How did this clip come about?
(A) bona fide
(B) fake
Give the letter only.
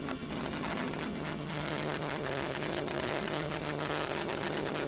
B